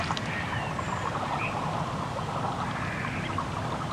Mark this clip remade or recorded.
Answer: recorded